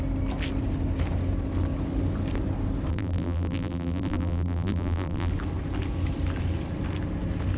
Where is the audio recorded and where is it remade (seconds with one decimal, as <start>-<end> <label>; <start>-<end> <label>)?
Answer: 0.0-2.9 recorded; 2.9-5.3 remade; 5.3-7.6 recorded